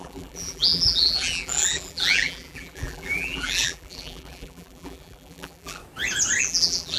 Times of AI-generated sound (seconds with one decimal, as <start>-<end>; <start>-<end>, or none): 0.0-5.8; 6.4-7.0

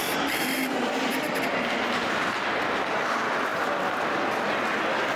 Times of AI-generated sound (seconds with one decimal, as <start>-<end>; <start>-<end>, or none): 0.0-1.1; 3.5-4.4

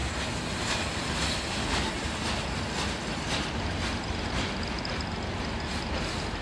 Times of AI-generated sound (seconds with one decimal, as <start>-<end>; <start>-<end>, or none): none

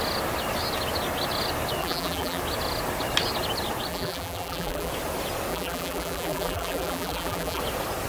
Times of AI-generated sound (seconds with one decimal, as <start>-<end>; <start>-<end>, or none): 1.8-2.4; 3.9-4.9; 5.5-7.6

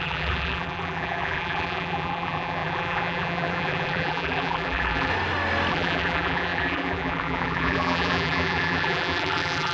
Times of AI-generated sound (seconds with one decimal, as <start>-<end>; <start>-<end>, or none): 0.0-5.1; 5.7-9.7

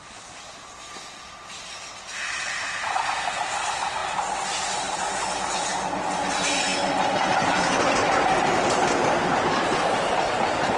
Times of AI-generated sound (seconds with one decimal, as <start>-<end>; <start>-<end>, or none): none